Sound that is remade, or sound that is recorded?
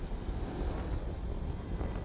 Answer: recorded